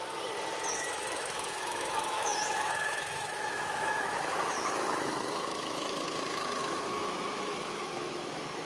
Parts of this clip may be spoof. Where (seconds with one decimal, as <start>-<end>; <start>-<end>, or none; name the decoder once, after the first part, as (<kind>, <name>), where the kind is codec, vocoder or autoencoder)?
0.7-8.6 (autoencoder, DAC-VAE)